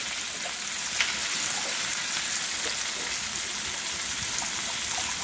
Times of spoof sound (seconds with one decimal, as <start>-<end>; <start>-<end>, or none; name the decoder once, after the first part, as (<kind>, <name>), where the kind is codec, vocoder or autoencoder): none